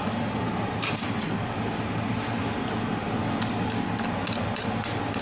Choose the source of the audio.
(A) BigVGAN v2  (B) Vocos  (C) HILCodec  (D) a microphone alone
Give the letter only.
D